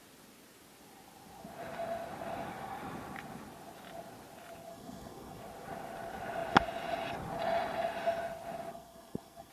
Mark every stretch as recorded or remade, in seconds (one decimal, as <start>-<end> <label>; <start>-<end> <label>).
0.0-4.7 recorded; 4.7-5.4 remade; 5.4-8.7 recorded; 8.7-9.5 remade